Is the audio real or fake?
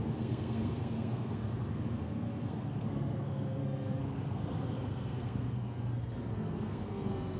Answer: fake